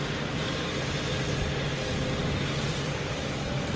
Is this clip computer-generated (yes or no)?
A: no